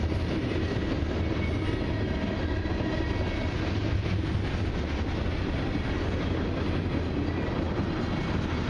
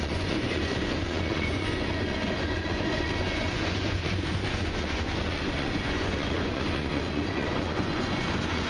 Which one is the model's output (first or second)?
second